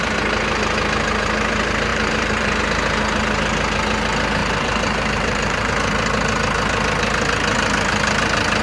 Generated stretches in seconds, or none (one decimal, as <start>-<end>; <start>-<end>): 1.9-2.6; 4.4-5.7